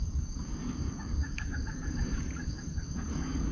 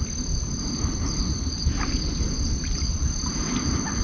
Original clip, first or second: second